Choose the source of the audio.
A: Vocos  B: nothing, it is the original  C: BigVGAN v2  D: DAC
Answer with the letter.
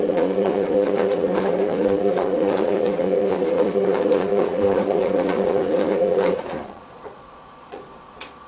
A